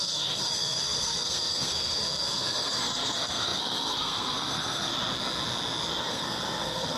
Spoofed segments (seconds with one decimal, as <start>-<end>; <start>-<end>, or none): 0.0-4.9; 6.0-7.0